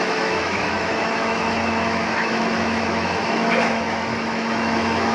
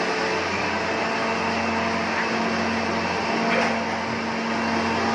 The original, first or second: second